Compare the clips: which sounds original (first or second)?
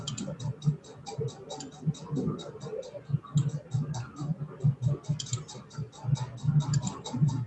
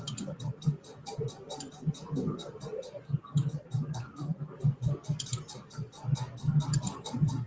first